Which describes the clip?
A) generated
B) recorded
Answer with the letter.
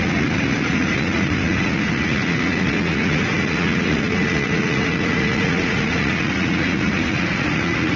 A